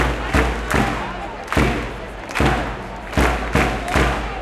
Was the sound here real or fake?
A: real